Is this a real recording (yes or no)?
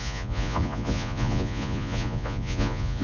no